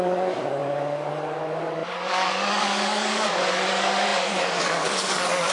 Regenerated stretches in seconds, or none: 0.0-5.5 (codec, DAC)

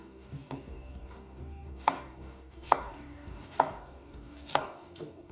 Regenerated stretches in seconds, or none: 0.0-5.3 (codec, DAC)

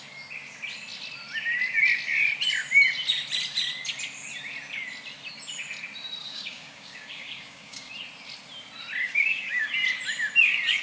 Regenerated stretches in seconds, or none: 6.2-7.9 (codec, DAC); 9.0-9.7

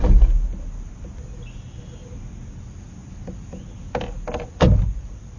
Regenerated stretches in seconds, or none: none